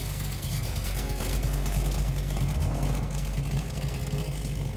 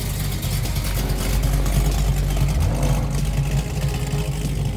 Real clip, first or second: second